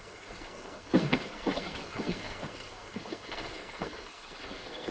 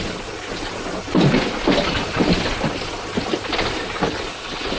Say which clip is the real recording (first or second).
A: second